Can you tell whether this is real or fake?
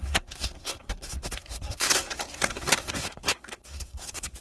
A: fake